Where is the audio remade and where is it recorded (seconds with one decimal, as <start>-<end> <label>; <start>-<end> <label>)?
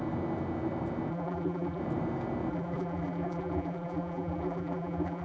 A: 0.0-1.1 recorded; 1.1-1.8 remade; 1.8-2.5 recorded; 2.5-5.2 remade